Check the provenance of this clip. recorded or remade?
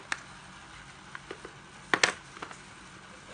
recorded